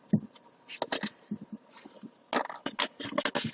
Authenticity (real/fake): real